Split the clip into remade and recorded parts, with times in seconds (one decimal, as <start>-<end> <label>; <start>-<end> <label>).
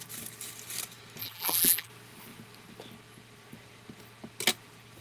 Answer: 0.0-1.2 recorded; 1.2-1.9 remade; 1.9-5.0 recorded